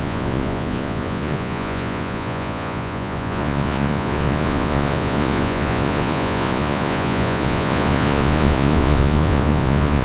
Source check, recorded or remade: remade